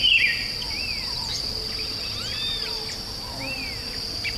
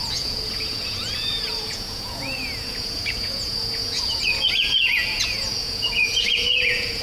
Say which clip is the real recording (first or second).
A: first